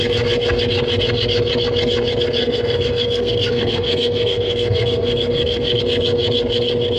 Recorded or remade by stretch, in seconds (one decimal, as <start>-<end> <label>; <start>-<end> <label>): 0.0-2.4 recorded; 2.4-5.8 remade; 5.8-7.0 recorded